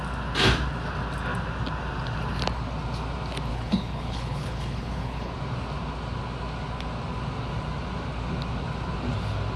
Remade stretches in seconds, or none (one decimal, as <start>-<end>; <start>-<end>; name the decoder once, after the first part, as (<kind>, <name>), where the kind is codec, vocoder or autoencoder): 3.5-5.3 (codec, HILCodec)